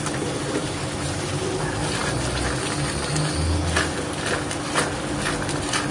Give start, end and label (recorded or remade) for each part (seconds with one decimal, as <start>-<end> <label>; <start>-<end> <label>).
0.0-0.6 recorded; 0.6-1.5 remade; 1.5-5.9 recorded